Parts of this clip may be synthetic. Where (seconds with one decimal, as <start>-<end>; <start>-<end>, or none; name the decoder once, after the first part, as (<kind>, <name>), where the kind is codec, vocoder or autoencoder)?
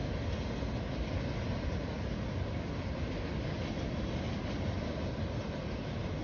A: none